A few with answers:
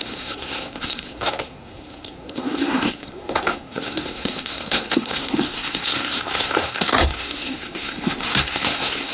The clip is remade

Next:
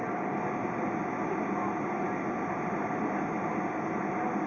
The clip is recorded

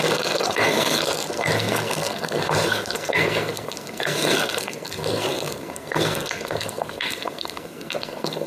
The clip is remade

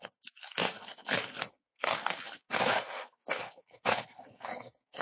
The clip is remade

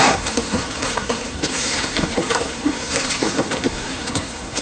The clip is remade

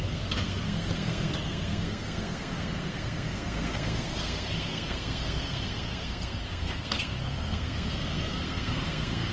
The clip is remade